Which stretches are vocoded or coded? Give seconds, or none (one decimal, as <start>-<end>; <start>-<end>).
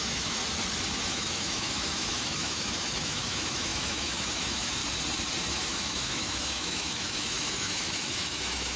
0.0-0.4; 1.0-4.8; 5.5-8.8